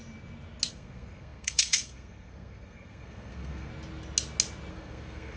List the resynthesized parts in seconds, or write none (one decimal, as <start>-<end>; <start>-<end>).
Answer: 0.7-3.7; 4.7-5.4